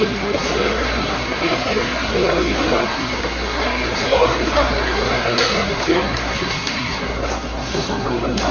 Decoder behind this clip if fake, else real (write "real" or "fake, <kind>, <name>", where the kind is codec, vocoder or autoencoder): fake, codec, SNAC